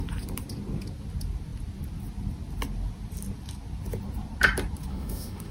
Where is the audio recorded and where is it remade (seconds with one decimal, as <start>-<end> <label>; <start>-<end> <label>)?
0.0-4.9 recorded; 4.9-5.5 remade